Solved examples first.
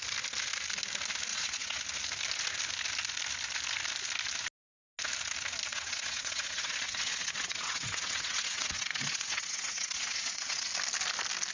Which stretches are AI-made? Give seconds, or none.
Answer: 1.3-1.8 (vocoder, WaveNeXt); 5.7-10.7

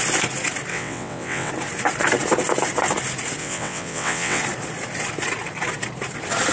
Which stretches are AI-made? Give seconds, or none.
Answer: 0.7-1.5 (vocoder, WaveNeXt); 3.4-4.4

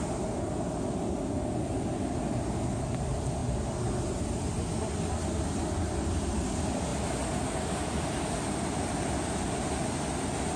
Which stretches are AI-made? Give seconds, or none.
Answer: none